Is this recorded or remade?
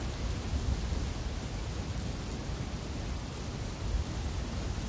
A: recorded